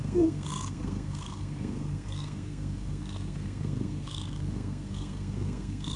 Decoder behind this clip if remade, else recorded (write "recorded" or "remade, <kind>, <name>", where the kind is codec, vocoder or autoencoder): remade, codec, SNAC